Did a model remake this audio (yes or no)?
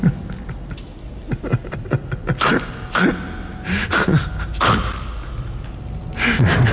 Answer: no